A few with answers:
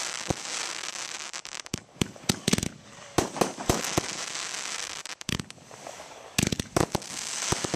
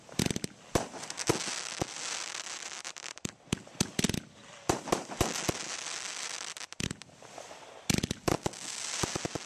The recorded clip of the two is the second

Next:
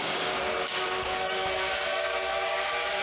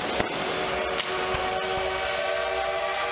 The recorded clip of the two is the second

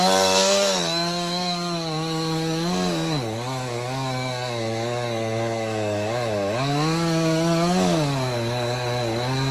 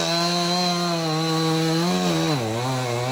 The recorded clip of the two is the second